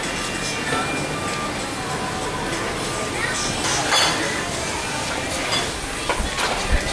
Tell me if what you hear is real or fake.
real